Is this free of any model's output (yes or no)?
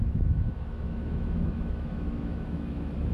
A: no